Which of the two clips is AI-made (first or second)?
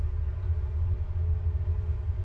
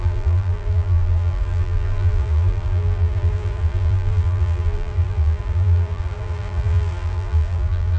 second